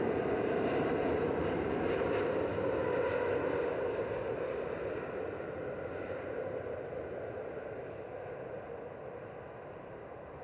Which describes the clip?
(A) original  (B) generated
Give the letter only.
A